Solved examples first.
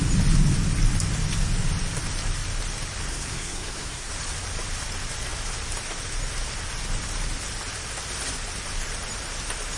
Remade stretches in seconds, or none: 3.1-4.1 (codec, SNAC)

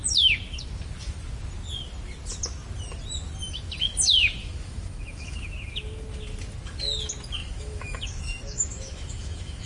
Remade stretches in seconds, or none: 4.4-5.5 (autoencoder, DAC-VAE); 7.4-9.7

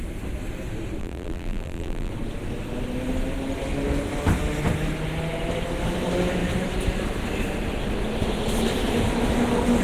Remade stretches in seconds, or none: 1.0-2.1 (vocoder, BigVGAN v2)

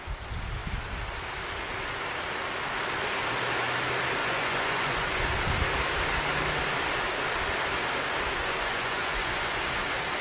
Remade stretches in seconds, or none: 4.2-5.3 (vocoder, Vocos); 8.4-9.6

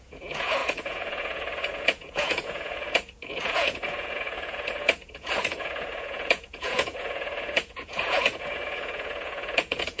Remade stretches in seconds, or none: 0.0-10.0 (vocoder, Vocos)

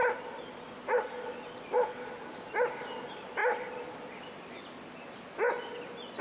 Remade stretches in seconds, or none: none